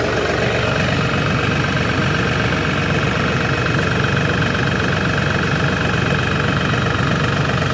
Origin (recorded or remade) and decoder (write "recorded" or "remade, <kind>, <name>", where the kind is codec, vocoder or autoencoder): recorded